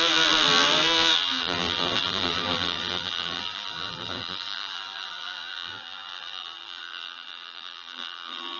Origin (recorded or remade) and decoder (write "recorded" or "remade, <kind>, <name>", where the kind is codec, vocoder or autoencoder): remade, vocoder, BigVGAN v2